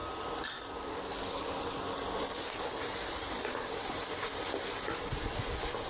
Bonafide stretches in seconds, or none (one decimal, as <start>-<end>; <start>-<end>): 0.0-5.9